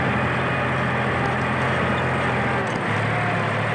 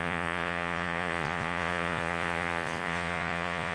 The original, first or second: first